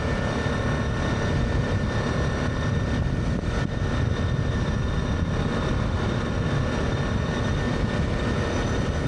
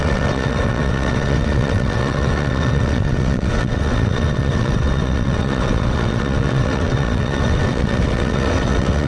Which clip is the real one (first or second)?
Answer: first